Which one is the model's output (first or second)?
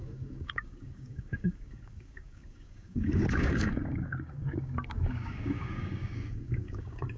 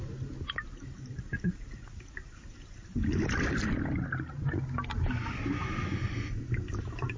first